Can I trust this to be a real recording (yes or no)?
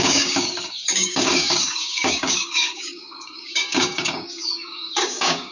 no